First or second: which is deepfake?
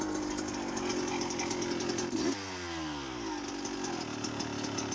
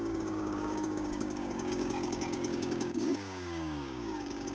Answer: second